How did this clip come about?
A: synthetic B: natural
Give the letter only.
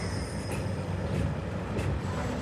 B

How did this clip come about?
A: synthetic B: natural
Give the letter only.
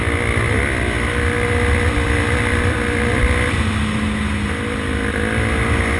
B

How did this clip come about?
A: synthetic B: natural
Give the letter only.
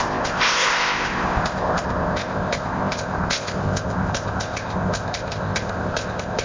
A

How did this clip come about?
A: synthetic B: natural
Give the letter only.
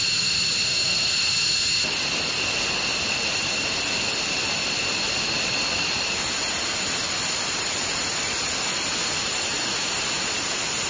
B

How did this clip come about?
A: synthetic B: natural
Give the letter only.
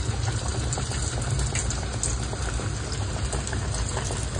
B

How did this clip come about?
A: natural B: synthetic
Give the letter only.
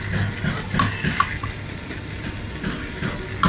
A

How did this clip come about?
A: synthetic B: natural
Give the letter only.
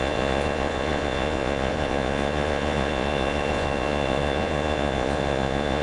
A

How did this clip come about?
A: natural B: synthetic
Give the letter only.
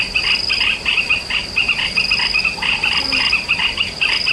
A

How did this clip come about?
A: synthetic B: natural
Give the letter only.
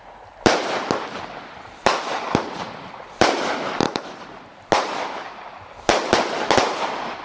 B